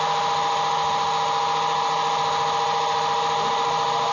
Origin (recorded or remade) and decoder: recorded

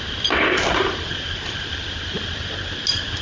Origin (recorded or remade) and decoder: recorded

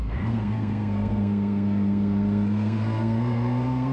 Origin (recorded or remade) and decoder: remade, codec, SNAC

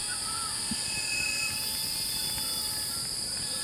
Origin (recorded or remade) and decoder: recorded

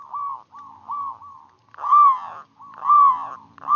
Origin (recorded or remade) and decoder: recorded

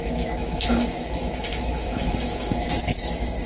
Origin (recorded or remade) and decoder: remade, autoencoder, DAC-VAE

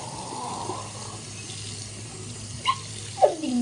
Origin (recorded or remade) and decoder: recorded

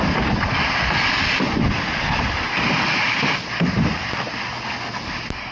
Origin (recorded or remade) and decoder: recorded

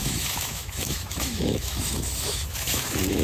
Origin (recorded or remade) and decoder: remade, autoencoder, DAC-VAE